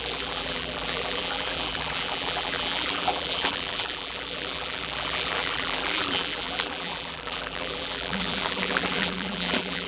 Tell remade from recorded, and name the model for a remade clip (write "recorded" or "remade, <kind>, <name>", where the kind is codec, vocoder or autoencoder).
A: remade, vocoder, BigVGAN v2